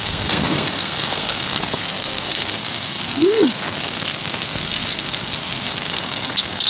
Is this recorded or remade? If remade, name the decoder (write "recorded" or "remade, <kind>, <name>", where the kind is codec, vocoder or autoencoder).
remade, codec, SNAC